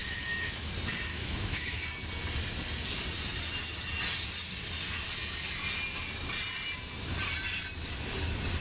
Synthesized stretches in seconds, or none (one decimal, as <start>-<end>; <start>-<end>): 0.0-0.7; 1.1-1.8